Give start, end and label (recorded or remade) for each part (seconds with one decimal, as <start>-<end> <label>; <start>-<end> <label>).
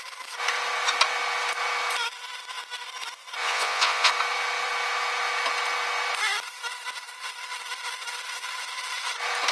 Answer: 0.0-3.4 recorded; 3.4-4.1 remade; 4.1-9.5 recorded